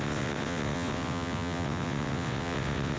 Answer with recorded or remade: remade